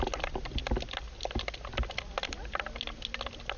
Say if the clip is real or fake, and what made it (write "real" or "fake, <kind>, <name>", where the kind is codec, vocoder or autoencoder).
real